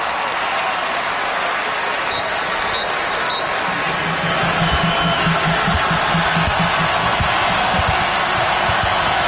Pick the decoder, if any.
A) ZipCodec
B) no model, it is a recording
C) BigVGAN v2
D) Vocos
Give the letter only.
B